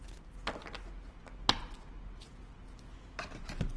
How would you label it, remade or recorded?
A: recorded